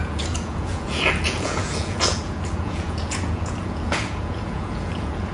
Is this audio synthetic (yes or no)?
yes